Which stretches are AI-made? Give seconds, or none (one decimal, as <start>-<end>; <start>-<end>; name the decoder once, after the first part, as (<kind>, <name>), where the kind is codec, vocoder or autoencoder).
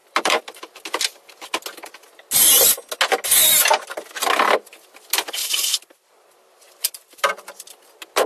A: 0.0-0.6 (vocoder, BigVGAN v2); 2.4-2.9; 5.4-7.8